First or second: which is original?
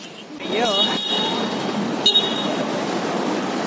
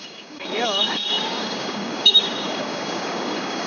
first